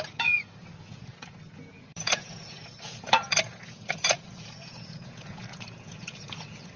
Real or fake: fake